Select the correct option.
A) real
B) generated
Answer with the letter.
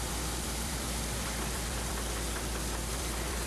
B